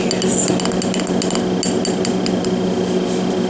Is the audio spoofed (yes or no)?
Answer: no